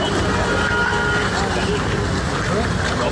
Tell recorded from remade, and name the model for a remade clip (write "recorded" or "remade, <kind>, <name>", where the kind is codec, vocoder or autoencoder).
recorded